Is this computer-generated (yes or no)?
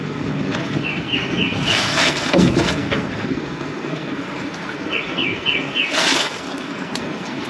yes